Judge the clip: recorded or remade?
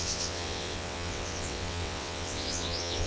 remade